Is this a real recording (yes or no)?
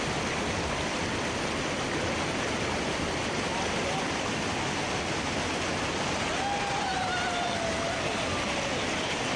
yes